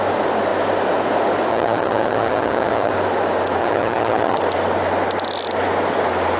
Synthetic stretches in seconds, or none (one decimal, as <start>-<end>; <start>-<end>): 1.5-2.9; 3.6-4.4